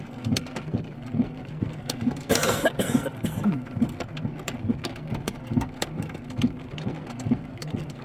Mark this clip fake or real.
fake